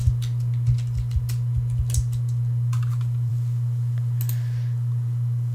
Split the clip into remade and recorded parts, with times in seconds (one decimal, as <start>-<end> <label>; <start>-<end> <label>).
0.0-5.5 recorded